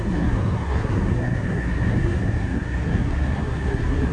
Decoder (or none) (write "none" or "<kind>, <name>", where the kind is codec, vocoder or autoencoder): codec, SNAC